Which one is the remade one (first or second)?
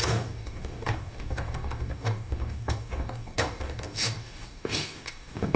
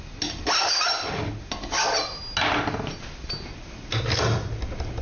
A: first